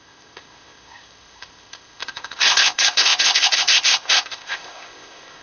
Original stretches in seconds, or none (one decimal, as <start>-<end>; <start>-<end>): none